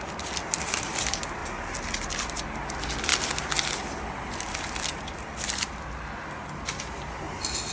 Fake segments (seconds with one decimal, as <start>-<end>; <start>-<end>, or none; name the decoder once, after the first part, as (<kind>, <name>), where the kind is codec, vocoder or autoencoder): none